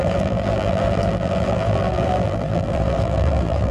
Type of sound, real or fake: fake